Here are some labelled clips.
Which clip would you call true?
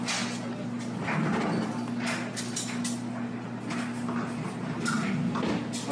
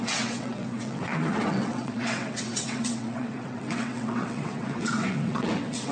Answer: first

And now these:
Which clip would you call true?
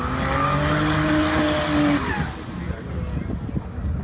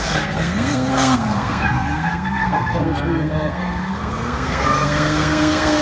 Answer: first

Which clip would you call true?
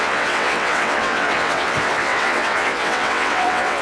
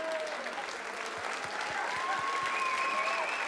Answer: second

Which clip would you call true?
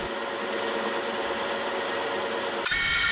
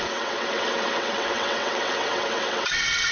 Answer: first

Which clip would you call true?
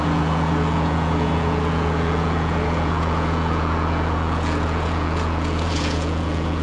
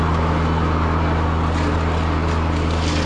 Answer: second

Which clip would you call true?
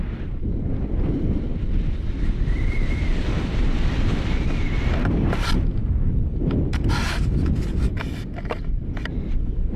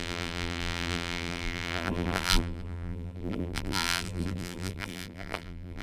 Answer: first